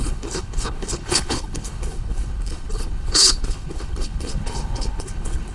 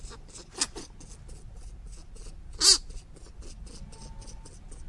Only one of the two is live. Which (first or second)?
second